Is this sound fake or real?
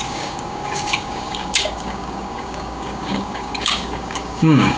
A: fake